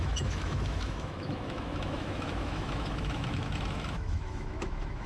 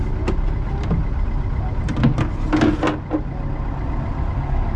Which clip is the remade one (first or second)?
first